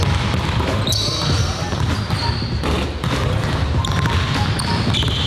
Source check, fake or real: real